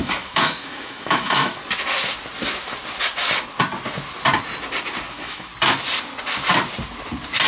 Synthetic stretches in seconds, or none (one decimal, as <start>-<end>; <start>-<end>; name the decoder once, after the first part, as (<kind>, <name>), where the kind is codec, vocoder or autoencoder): 0.0-1.6 (autoencoder, DAC-VAE); 5.1-5.5